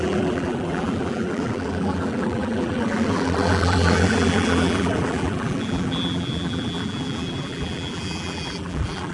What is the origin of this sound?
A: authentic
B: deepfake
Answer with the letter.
B